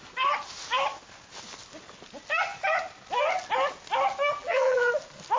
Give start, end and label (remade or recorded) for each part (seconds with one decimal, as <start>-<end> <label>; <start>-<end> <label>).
0.0-4.4 recorded; 4.4-4.9 remade; 4.9-5.4 recorded